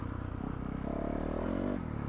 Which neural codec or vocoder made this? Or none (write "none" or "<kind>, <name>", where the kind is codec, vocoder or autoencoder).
none